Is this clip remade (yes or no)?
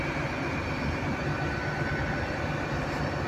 no